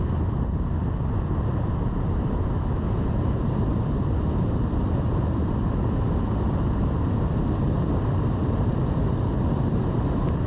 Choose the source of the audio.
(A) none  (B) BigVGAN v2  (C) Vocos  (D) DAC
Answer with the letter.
A